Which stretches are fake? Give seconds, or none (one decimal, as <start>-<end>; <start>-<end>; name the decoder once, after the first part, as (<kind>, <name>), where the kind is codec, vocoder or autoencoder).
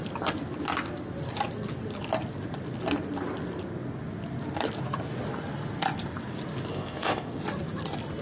6.7-7.4 (codec, ZipCodec)